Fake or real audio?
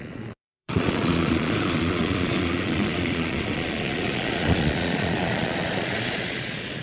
fake